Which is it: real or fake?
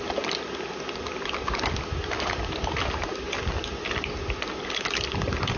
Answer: real